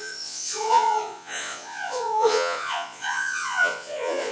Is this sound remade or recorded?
remade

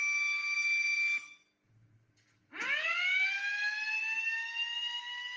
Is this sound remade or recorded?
recorded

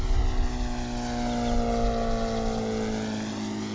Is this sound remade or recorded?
recorded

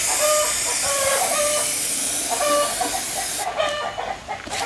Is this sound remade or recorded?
recorded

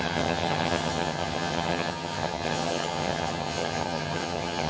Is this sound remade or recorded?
remade